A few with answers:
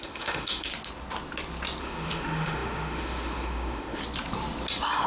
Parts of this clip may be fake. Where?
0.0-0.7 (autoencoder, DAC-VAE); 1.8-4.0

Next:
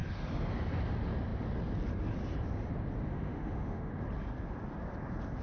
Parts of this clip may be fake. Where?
3.1-3.9 (autoencoder, DAC-VAE)

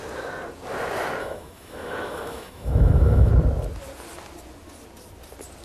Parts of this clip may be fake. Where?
1.2-3.3 (autoencoder, DAC-VAE)

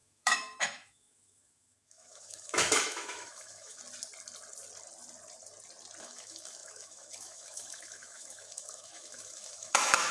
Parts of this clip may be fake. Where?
0.0-3.8 (autoencoder, DAC-VAE); 6.0-10.1

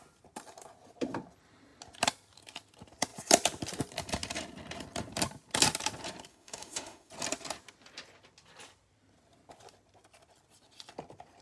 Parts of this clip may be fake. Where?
6.3-7.1 (autoencoder, DAC-VAE)